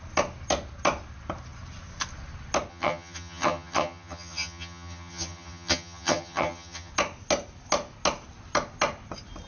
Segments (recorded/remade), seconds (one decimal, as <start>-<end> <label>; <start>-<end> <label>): 0.0-2.7 recorded; 2.7-6.9 remade; 6.9-9.5 recorded